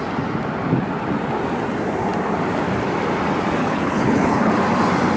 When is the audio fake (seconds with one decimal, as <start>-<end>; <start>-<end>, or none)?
3.6-4.5